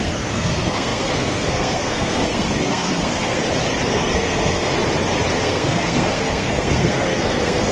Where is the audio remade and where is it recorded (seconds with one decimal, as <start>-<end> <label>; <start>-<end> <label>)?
0.0-3.4 remade; 3.4-3.9 recorded; 3.9-4.7 remade; 4.7-5.4 recorded; 5.4-7.7 remade